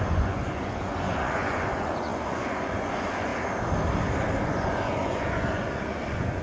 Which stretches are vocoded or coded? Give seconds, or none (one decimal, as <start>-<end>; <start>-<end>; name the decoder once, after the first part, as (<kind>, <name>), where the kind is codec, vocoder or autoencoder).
0.0-3.3 (vocoder, Vocos); 4.4-6.4